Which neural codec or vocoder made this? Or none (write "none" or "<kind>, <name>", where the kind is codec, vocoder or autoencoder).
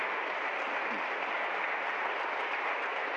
none